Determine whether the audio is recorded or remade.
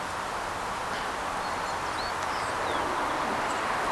recorded